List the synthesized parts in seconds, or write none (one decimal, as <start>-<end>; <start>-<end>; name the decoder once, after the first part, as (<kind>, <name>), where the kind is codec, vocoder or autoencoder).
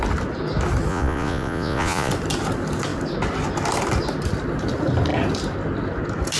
0.9-2.1 (vocoder, Vocos)